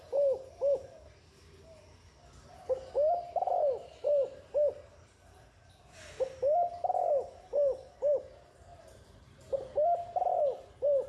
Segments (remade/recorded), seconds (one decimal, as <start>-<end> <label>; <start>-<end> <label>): 0.0-8.7 recorded; 8.7-10.6 remade; 10.6-11.1 recorded